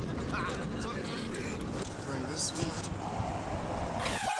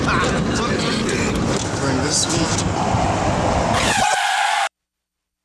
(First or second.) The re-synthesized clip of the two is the second